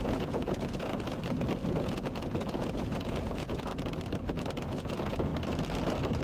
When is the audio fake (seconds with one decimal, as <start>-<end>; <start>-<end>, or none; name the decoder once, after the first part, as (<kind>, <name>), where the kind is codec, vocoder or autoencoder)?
0.0-0.9 (vocoder, Vocos); 1.7-3.7; 4.7-5.3